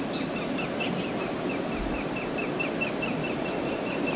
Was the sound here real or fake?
real